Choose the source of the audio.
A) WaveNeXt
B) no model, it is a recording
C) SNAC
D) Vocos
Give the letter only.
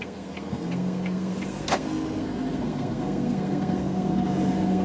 C